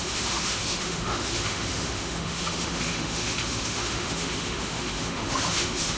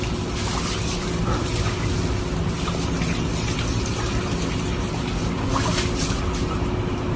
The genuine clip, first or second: second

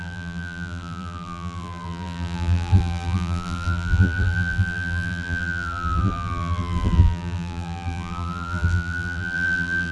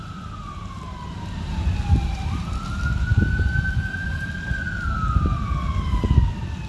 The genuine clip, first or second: second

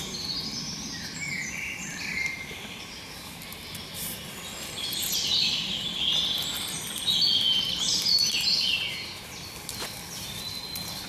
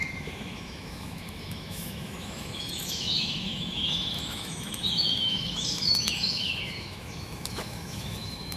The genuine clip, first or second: first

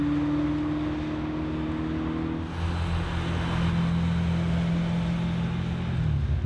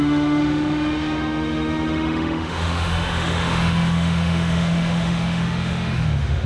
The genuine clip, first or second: first